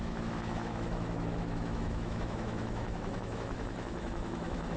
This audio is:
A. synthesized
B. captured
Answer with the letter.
A